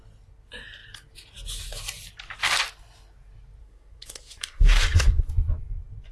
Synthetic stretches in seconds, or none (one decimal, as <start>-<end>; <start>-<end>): 3.6-5.3